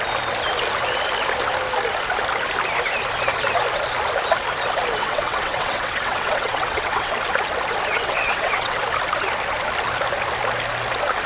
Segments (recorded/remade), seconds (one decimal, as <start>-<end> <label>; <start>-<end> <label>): 0.0-5.0 recorded; 5.0-7.1 remade; 7.1-7.9 recorded; 7.9-8.8 remade; 8.8-11.3 recorded